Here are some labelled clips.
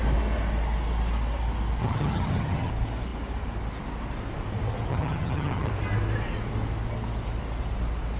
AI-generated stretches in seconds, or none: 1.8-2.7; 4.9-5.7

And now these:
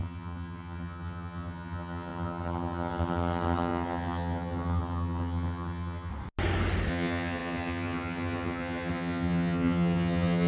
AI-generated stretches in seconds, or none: 0.0-6.1; 6.9-10.5